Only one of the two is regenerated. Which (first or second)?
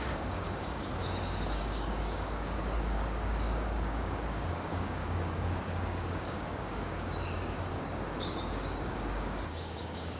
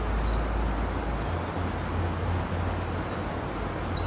first